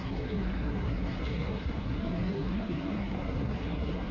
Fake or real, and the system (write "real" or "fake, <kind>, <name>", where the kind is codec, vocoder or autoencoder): fake, codec, SNAC